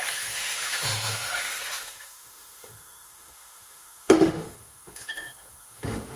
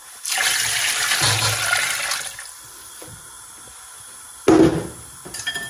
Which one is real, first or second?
second